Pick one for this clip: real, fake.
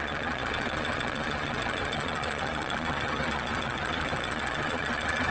fake